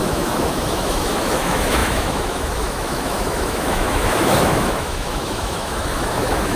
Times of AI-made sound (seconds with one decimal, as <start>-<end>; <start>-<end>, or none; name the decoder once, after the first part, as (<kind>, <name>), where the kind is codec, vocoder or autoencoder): 0.0-6.6 (autoencoder, DAC-VAE)